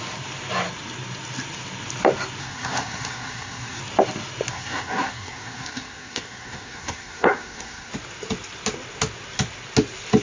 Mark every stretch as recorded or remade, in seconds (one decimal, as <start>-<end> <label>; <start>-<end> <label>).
0.0-2.4 recorded; 2.4-3.8 remade; 3.8-4.5 recorded; 4.5-7.9 remade; 7.9-10.2 recorded